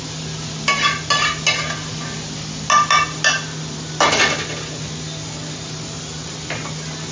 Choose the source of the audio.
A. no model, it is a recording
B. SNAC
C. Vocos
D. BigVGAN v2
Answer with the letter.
A